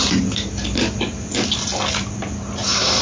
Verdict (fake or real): real